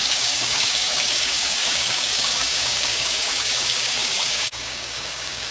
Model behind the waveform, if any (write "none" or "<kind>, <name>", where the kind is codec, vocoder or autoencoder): codec, DAC